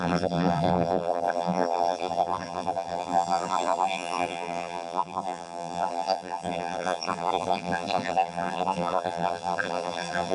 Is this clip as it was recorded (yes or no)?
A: no